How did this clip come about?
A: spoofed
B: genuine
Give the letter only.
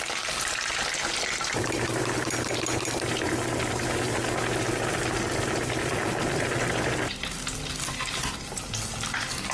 B